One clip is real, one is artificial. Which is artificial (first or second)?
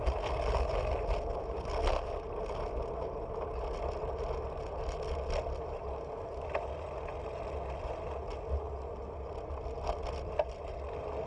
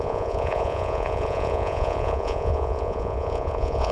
second